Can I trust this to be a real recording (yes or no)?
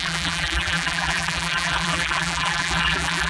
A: no